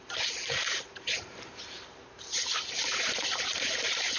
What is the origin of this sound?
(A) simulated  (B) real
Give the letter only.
A